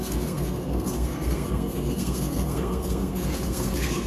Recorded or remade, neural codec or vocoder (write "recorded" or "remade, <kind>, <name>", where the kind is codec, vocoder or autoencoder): remade, codec, SNAC